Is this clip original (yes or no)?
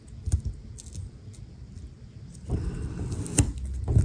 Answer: yes